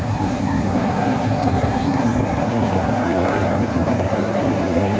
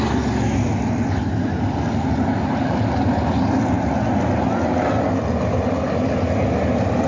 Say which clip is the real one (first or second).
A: second